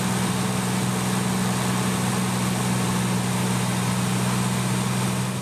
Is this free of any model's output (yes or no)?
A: yes